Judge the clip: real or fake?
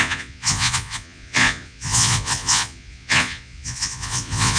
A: fake